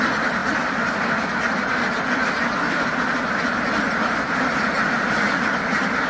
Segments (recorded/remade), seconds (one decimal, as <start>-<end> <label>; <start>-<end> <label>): 0.0-0.4 recorded; 0.4-3.3 remade; 3.3-4.8 recorded; 4.8-5.5 remade; 5.5-6.1 recorded